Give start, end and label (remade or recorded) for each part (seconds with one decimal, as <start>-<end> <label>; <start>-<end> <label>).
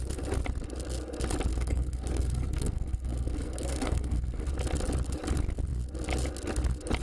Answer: 0.0-1.5 recorded; 1.5-4.5 remade; 4.5-7.0 recorded